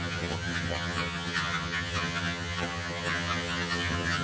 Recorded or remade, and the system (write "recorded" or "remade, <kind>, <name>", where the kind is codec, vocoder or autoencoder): remade, vocoder, HiFi-GAN